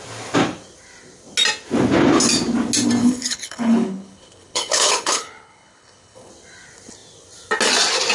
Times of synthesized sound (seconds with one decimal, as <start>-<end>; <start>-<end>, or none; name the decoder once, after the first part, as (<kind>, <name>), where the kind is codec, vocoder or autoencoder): 3.0-6.3 (codec, HILCodec)